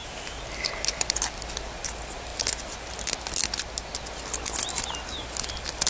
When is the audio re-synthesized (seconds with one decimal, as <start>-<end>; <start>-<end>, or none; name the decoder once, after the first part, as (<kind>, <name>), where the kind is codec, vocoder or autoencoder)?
none